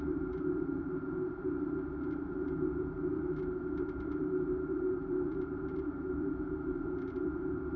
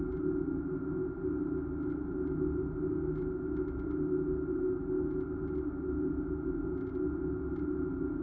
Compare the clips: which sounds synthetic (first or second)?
first